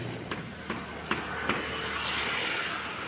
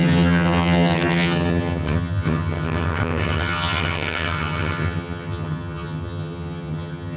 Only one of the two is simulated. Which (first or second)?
second